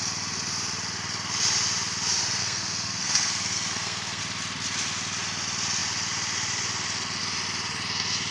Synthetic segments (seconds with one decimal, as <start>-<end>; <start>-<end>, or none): 2.4-4.2